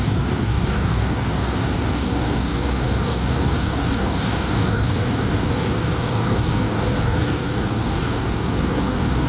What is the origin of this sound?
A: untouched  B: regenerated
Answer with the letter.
B